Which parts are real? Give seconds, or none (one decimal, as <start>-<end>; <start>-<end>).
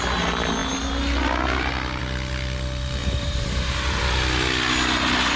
0.0-3.0; 4.0-5.4